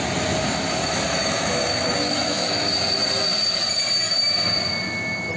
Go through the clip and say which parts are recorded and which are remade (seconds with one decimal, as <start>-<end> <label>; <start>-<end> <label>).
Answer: 0.0-0.8 recorded; 0.8-2.7 remade; 2.7-5.4 recorded